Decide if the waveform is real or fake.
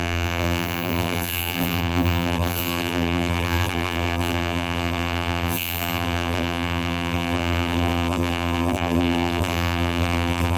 fake